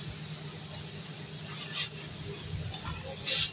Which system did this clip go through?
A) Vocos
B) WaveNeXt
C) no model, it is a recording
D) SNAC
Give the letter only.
C